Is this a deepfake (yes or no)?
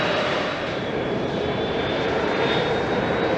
yes